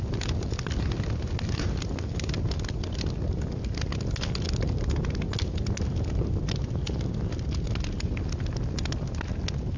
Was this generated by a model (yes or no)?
no